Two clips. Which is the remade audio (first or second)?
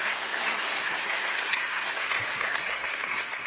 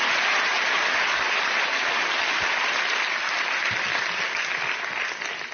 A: first